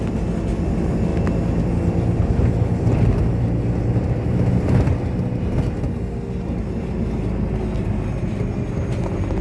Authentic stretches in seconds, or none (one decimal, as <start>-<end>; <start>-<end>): 0.0-9.4

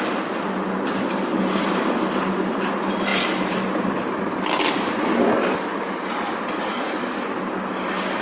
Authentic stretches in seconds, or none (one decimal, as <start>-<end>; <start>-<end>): 0.0-8.2

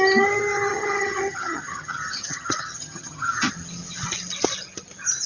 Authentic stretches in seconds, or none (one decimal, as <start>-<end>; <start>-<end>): 0.0-0.7; 3.5-5.3

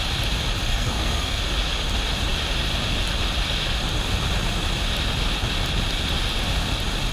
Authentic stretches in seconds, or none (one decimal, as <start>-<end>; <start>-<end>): 0.0-0.7; 1.4-7.1

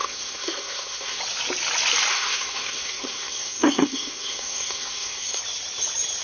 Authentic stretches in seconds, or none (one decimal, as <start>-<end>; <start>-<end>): 1.2-2.1; 5.4-6.2

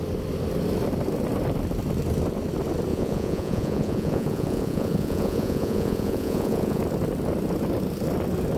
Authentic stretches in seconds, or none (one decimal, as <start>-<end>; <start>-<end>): 0.0-2.9; 6.8-8.6

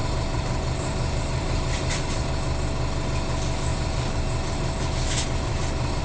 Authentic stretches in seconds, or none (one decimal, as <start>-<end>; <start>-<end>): 2.3-3.7